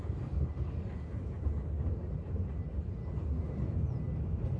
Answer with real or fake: real